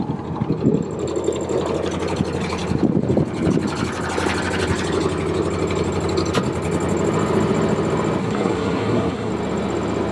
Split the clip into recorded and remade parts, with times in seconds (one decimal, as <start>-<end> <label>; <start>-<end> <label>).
0.0-8.2 recorded; 8.2-9.3 remade; 9.3-10.1 recorded